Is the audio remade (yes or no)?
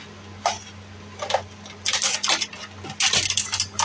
no